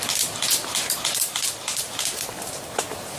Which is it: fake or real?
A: fake